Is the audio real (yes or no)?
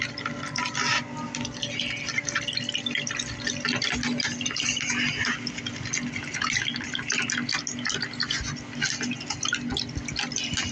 yes